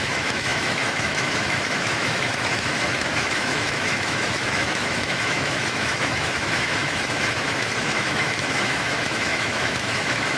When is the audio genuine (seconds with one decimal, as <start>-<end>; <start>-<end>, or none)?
none

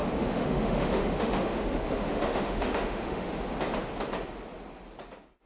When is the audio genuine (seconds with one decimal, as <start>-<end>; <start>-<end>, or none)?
3.3-5.5

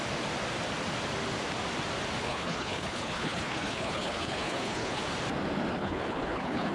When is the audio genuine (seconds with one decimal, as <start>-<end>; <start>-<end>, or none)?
0.0-2.2; 5.0-5.7

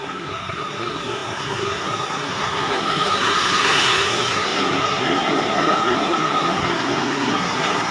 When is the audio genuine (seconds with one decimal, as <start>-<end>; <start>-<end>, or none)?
none

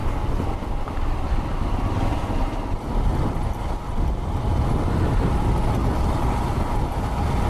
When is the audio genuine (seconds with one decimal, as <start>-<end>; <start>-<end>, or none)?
0.0-7.5

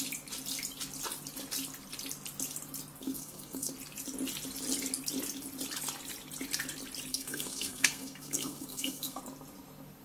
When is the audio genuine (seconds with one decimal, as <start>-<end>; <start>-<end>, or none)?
0.0-3.0; 3.7-7.1; 9.2-10.0

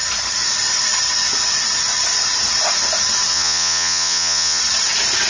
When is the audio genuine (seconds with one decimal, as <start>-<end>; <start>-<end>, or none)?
0.0-3.3; 4.6-5.3